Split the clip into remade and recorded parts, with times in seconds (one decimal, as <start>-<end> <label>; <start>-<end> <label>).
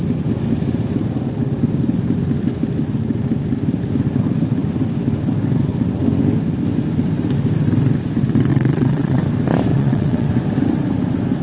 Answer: 0.0-8.5 recorded; 8.5-9.2 remade; 9.2-9.7 recorded; 9.7-10.3 remade; 10.3-11.4 recorded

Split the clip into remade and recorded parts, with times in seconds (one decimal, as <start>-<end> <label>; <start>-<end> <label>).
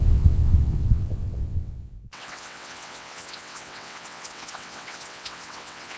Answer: 0.0-6.0 remade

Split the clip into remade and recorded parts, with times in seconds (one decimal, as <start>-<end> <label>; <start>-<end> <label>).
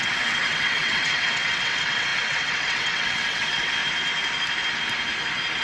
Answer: 0.0-3.8 remade; 3.8-5.6 recorded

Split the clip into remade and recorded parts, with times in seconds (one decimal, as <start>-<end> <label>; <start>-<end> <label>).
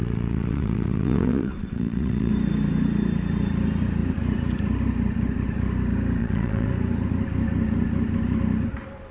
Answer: 0.0-2.3 remade; 2.3-6.2 recorded; 6.2-6.7 remade; 6.7-9.1 recorded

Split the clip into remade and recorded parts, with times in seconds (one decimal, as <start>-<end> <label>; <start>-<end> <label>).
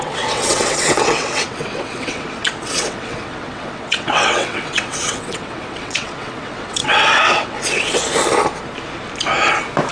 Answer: 0.0-8.0 remade; 8.0-9.9 recorded